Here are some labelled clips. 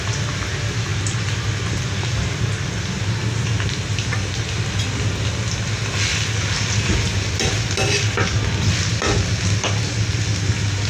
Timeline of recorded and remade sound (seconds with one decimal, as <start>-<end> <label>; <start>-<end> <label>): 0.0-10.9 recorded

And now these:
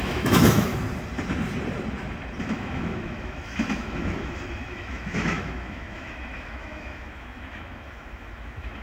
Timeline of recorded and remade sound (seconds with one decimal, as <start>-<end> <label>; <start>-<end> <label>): 0.0-0.7 remade; 0.7-2.4 recorded; 2.4-8.8 remade

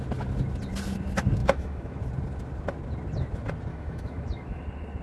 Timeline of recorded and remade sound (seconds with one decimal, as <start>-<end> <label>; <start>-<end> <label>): 0.0-1.4 recorded; 1.4-2.0 remade; 2.0-3.7 recorded; 3.7-4.6 remade; 4.6-5.0 recorded